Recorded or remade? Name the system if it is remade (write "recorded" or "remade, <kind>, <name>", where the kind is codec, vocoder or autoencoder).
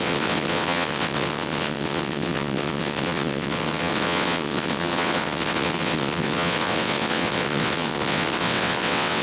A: remade, vocoder, WaveNeXt